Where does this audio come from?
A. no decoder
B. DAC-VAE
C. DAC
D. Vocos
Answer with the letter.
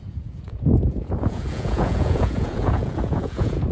D